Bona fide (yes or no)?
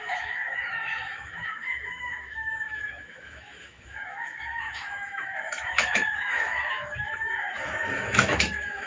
no